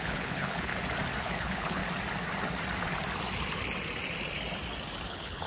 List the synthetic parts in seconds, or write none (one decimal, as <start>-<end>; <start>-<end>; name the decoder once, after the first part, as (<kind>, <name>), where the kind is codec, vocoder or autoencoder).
0.0-0.7 (codec, HILCodec); 1.2-1.8; 5.1-5.5